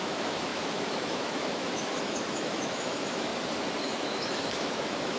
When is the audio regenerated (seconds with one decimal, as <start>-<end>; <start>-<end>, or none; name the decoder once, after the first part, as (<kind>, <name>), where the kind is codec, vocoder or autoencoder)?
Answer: 0.0-3.3 (autoencoder, DAC-VAE); 3.8-5.2